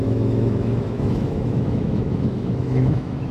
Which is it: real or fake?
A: fake